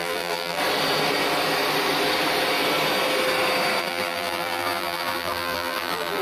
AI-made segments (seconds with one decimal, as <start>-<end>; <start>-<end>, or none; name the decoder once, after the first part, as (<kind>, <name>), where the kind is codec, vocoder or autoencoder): 0.0-0.6 (vocoder, BigVGAN v2); 3.8-6.2